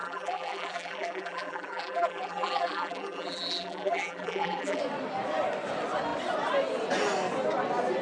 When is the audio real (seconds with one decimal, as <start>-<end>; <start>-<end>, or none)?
4.8-8.0